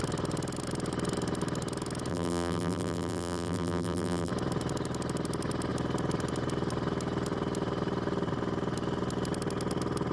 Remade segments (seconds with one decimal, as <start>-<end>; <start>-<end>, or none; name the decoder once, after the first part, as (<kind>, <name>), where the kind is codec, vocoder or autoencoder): 2.1-4.3 (vocoder, BigVGAN v2)